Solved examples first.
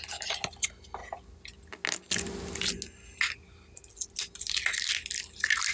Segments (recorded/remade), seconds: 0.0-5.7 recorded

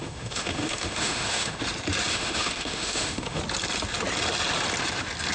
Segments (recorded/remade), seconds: 0.0-1.6 remade; 1.6-2.1 recorded; 2.1-3.4 remade; 3.4-5.3 recorded

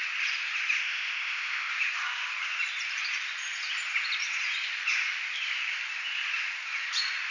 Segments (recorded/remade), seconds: 0.0-0.8 recorded; 0.8-1.7 remade; 1.7-7.3 recorded

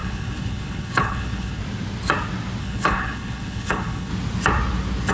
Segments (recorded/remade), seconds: 0.0-1.6 remade; 1.6-2.6 recorded; 2.6-4.1 remade; 4.1-5.1 recorded

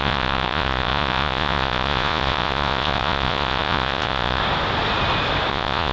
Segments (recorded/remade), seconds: 0.0-4.4 remade; 4.4-5.5 recorded; 5.5-5.9 remade

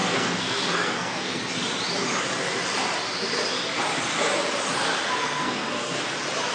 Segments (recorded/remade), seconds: 0.0-1.4 remade; 1.4-5.2 recorded; 5.2-6.0 remade; 6.0-6.5 recorded